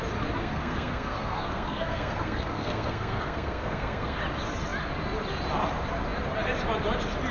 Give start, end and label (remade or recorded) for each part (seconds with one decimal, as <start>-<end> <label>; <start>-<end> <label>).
0.0-0.4 recorded; 0.4-4.2 remade; 4.2-7.3 recorded